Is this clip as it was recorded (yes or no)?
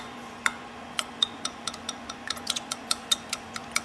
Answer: no